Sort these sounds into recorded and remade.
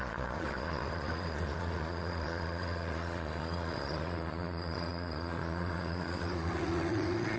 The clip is remade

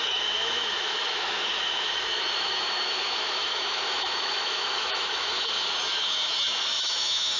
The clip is remade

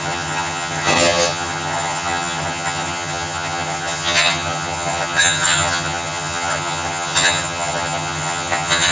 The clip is remade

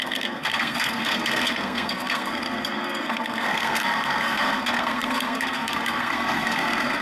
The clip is remade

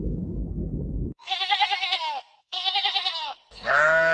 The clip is remade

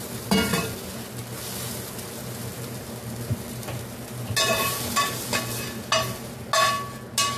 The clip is recorded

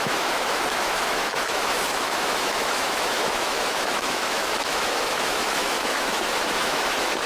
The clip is remade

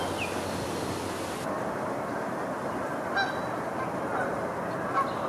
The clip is recorded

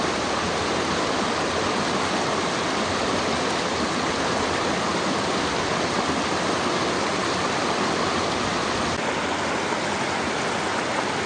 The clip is recorded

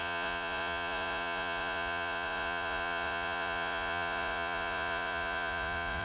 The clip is remade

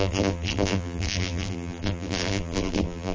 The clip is remade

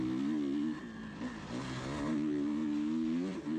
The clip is recorded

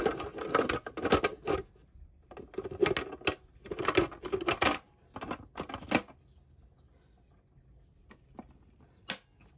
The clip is recorded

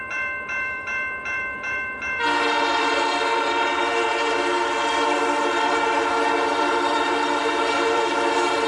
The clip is remade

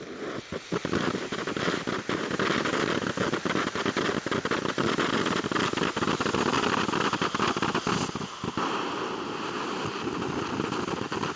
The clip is recorded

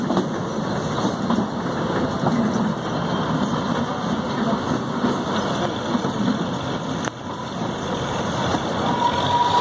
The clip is recorded